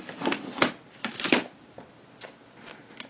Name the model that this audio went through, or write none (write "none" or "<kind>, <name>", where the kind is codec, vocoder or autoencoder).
none